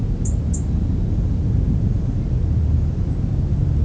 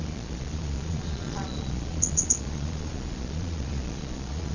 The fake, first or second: second